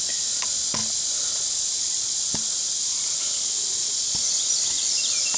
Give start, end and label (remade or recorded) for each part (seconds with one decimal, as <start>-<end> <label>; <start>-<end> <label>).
0.0-5.4 recorded